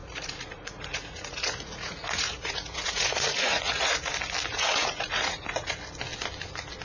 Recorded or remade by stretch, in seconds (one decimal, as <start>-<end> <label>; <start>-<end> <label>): 0.0-4.1 remade; 4.1-4.5 recorded; 4.5-5.8 remade; 5.8-6.8 recorded